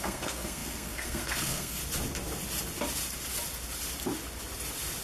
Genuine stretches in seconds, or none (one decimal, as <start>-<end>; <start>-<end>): 1.8-5.0